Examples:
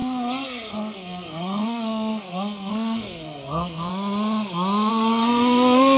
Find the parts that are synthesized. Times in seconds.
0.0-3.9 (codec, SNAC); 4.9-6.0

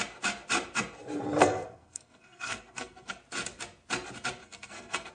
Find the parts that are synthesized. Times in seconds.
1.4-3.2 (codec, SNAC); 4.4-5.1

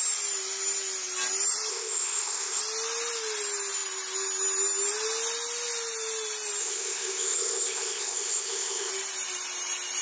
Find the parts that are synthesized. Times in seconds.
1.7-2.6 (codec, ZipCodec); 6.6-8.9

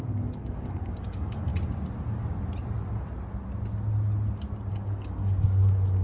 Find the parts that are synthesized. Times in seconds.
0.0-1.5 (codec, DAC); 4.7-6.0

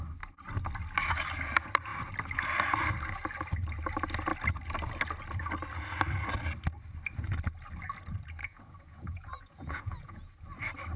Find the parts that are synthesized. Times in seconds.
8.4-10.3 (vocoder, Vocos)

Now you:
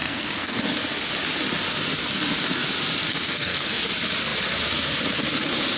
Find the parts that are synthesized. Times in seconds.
0.0-0.6 (codec, SNAC); 3.1-3.8

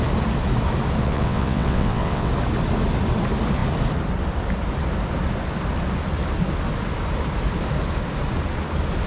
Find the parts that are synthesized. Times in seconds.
1.0-2.3 (vocoder, WaveNeXt)

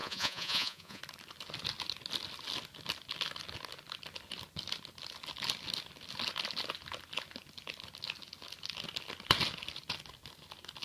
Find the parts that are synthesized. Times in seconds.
0.0-1.0 (vocoder, Vocos)